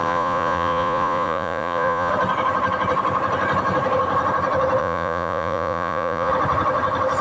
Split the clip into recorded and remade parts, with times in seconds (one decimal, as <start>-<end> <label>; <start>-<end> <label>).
0.0-2.1 remade; 2.1-4.8 recorded; 4.8-6.3 remade; 6.3-7.2 recorded